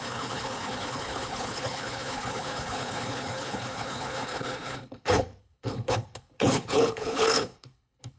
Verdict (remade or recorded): remade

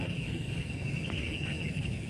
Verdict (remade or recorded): remade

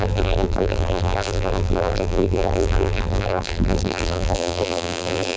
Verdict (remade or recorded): remade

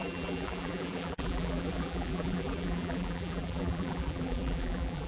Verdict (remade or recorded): remade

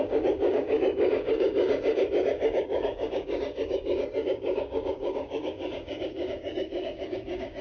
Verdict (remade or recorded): remade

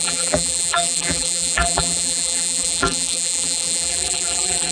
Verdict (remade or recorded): remade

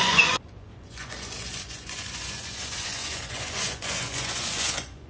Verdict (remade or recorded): remade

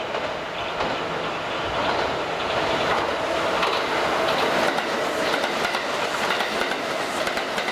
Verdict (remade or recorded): recorded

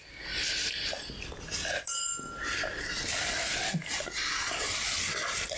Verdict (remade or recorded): recorded